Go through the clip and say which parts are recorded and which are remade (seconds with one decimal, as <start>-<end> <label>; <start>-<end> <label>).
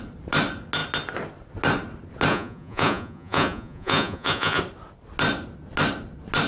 0.0-2.3 recorded; 2.3-4.6 remade; 4.6-6.5 recorded